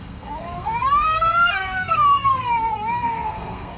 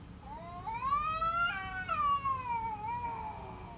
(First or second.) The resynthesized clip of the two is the first